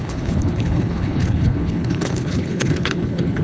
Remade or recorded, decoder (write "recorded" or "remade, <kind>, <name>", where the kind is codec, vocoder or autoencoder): remade, codec, HILCodec